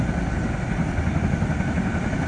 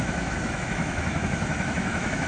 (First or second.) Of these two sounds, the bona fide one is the first